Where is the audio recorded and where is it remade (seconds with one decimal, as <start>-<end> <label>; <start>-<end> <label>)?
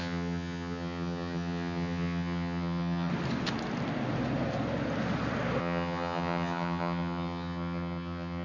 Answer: 0.0-3.1 remade; 3.1-5.6 recorded; 5.6-8.4 remade